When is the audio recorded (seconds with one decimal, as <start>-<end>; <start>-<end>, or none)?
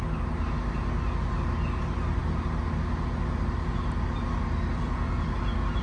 0.0-5.8